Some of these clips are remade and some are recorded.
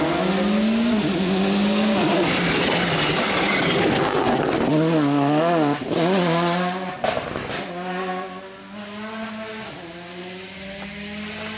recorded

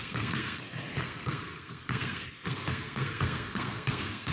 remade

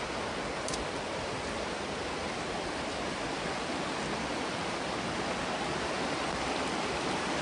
recorded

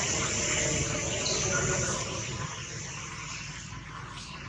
recorded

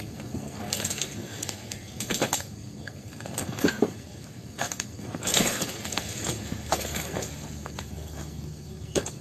remade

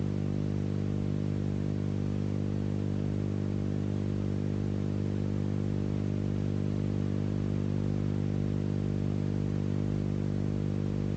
recorded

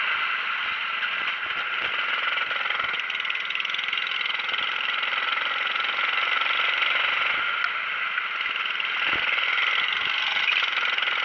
recorded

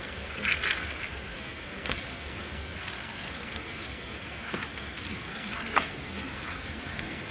remade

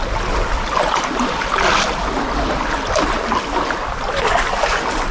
recorded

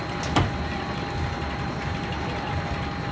recorded